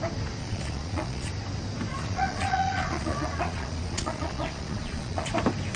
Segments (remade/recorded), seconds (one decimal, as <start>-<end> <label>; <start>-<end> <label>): 0.0-0.4 recorded; 0.4-1.3 remade; 1.3-1.9 recorded; 1.9-5.3 remade; 5.3-5.8 recorded